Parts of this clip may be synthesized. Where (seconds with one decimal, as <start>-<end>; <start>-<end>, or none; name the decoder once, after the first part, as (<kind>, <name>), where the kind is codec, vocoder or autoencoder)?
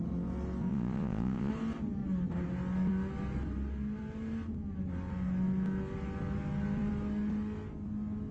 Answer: 0.7-1.5 (vocoder, Vocos)